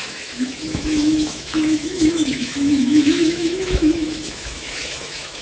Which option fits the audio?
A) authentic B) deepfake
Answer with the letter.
B